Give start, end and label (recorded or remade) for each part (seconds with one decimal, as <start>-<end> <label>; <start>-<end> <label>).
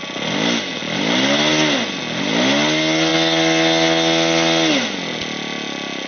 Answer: 0.0-6.1 recorded